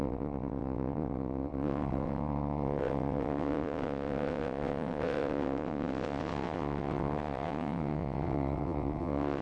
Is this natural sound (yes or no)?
no